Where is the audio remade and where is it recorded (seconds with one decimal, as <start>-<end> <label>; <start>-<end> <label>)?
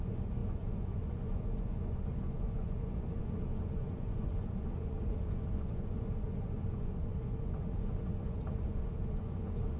0.0-9.8 remade